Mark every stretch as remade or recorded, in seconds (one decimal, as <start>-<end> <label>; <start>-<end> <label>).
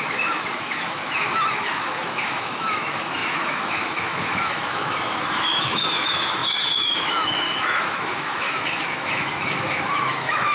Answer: 0.0-10.5 remade